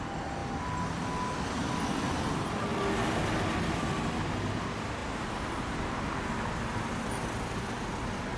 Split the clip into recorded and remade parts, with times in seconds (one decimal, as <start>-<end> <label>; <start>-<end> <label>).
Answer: 0.0-8.4 recorded